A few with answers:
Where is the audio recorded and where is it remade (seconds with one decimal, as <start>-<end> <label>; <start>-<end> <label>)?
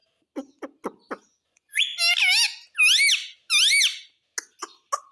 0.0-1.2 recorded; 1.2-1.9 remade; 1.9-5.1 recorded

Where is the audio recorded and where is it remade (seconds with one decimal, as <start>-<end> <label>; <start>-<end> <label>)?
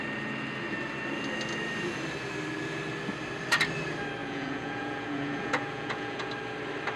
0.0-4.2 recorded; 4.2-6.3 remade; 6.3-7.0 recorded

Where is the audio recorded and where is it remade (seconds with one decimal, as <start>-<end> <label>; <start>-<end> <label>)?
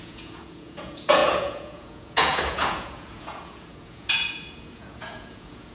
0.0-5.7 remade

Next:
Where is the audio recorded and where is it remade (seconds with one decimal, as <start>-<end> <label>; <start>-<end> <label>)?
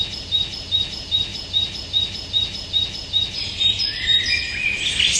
0.0-5.2 recorded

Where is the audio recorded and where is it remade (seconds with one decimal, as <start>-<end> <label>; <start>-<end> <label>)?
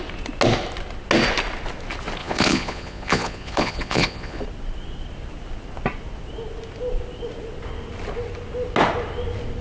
0.0-2.2 recorded; 2.2-4.4 remade; 4.4-9.6 recorded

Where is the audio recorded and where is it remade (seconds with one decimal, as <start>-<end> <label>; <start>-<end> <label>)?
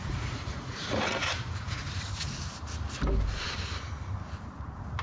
0.0-1.8 remade; 1.8-5.0 recorded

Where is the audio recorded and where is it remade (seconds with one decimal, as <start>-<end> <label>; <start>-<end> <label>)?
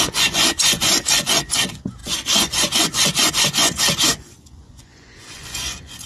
0.0-6.1 remade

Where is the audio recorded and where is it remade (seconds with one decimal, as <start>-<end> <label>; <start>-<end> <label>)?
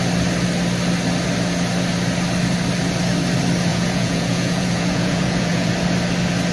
0.0-3.7 recorded; 3.7-5.7 remade; 5.7-6.5 recorded